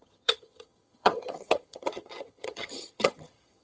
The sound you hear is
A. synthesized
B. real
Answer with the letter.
A